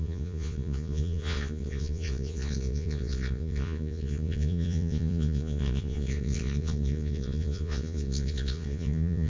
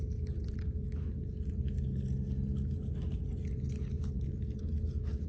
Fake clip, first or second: first